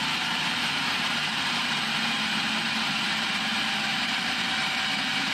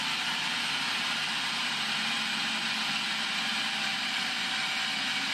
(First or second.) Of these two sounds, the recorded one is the second